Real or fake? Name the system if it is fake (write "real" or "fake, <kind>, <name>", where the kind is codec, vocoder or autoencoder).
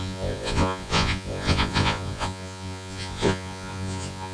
fake, vocoder, Vocos